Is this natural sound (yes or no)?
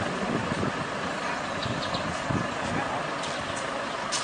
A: yes